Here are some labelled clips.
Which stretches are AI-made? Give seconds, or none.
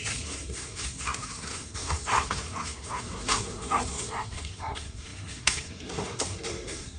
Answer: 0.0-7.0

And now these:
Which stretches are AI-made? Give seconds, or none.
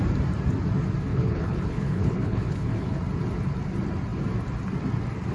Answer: 1.1-3.0